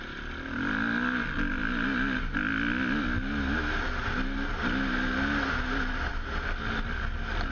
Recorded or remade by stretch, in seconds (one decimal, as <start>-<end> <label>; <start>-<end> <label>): 0.0-7.5 recorded